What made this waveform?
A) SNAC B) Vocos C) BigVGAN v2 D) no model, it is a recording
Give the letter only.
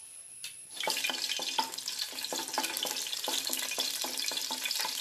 D